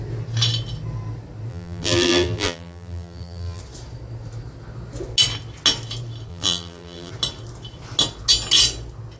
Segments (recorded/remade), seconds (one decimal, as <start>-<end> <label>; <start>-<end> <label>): 0.0-1.5 recorded; 1.5-3.6 remade; 3.6-6.3 recorded; 6.3-7.1 remade; 7.1-9.2 recorded